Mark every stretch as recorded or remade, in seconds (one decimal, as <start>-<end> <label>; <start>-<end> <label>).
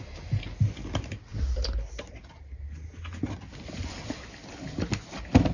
0.0-5.5 recorded